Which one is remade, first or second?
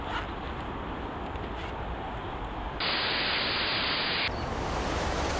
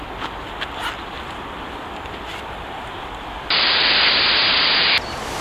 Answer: second